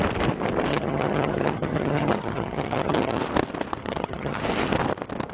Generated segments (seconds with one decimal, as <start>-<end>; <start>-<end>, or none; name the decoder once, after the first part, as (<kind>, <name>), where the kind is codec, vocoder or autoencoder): 0.7-3.2 (vocoder, HiFi-GAN); 3.8-4.4